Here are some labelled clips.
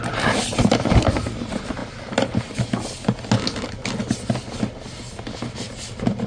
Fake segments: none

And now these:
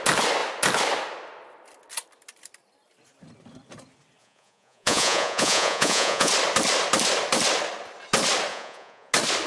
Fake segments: 4.2-6.3 (vocoder, Vocos); 8.5-9.1

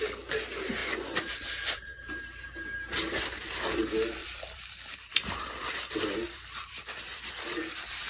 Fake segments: 4.2-7.3 (vocoder, BigVGAN v2)